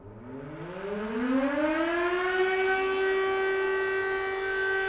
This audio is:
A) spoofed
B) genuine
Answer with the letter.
B